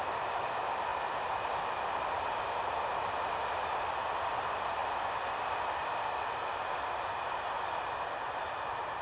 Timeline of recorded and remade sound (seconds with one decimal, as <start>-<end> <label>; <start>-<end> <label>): 0.0-9.0 recorded